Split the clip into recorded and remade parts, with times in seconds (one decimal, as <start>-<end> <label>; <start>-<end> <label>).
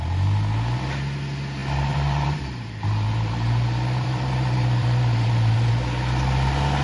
0.0-1.6 recorded; 1.6-5.7 remade; 5.7-6.8 recorded